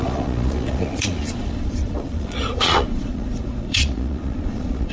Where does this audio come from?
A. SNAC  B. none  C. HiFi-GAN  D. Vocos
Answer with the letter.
D